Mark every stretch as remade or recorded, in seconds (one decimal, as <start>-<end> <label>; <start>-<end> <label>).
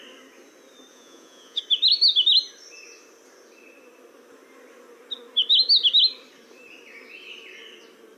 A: 0.0-0.9 recorded; 0.9-1.6 remade; 1.6-8.2 recorded